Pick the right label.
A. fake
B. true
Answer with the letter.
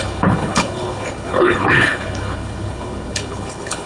A